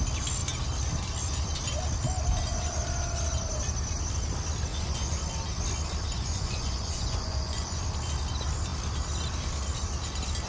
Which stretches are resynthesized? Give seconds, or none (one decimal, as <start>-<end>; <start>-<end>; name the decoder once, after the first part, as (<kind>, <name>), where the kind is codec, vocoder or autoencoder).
4.7-5.2 (vocoder, Vocos); 6.1-7.8